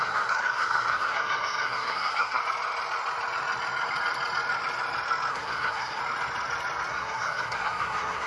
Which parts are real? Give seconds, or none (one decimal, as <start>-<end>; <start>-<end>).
2.4-5.3; 6.0-6.9